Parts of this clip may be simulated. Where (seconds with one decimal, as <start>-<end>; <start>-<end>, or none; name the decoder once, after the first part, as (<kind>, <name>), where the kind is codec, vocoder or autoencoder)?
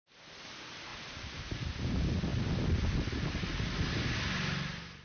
0.9-1.9 (vocoder, BigVGAN v2)